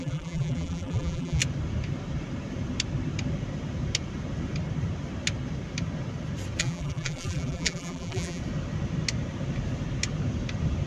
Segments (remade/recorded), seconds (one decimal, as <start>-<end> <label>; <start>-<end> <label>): 0.0-1.4 remade; 1.4-6.6 recorded; 6.6-8.4 remade; 8.4-10.9 recorded